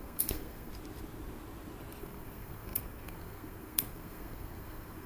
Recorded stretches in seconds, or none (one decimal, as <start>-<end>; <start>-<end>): 0.7-2.0

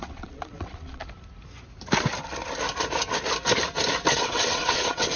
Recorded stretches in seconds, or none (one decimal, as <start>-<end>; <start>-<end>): 1.0-4.1

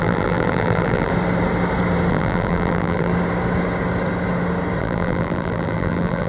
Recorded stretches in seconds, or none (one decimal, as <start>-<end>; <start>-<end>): 1.1-2.1; 3.1-4.8

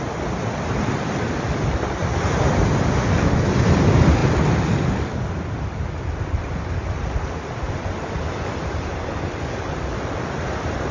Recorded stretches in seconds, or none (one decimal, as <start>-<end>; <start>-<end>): 2.0-2.7

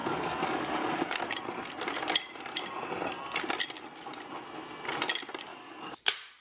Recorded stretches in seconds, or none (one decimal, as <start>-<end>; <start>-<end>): 1.2-5.5; 6.0-6.4

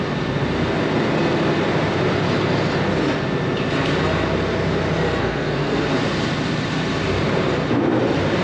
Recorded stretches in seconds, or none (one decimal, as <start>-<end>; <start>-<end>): 0.0-5.2; 5.8-8.4

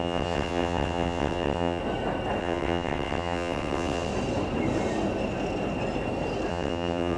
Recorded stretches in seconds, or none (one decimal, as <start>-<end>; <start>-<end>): 1.8-2.4; 4.1-6.5